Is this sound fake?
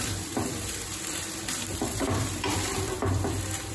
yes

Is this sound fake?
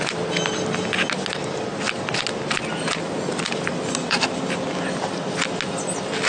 no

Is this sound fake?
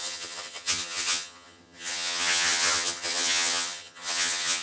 yes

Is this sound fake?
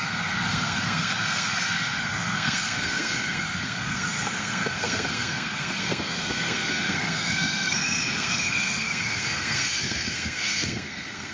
yes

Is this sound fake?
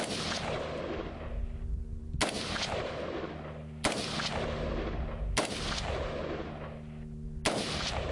no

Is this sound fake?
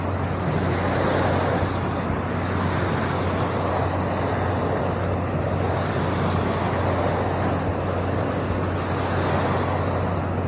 no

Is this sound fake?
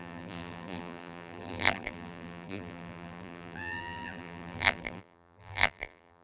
yes